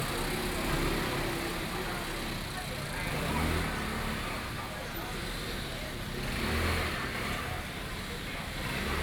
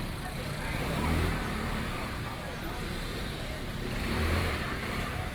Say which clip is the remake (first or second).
second